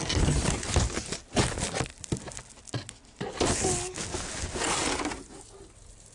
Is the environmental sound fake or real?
real